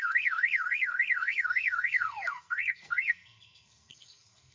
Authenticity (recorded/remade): remade